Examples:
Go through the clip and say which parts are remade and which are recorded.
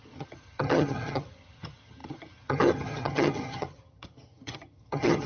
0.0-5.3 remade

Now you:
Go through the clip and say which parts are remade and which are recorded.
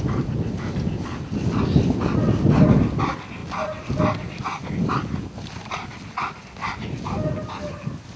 0.0-8.2 recorded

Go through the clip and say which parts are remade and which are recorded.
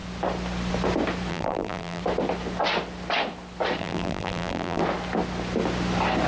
0.0-1.3 recorded; 1.3-2.0 remade; 2.0-3.8 recorded; 3.8-4.8 remade; 4.8-6.3 recorded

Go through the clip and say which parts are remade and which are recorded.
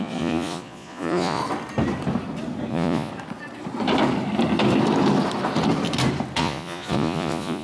0.0-1.4 remade; 1.4-2.7 recorded; 2.7-3.1 remade; 3.1-6.4 recorded; 6.4-7.6 remade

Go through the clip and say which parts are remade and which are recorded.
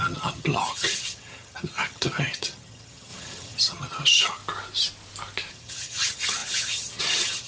0.0-4.4 remade; 4.4-5.5 recorded; 5.5-7.5 remade